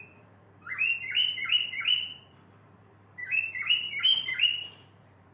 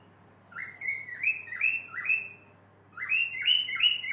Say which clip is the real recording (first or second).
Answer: second